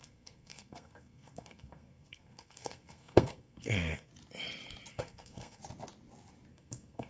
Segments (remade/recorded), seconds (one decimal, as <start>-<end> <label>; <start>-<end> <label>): 0.0-4.1 remade; 4.1-4.9 recorded; 4.9-5.6 remade; 5.6-6.5 recorded; 6.5-7.1 remade